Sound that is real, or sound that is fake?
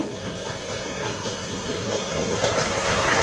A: fake